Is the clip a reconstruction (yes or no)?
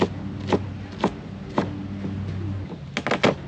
no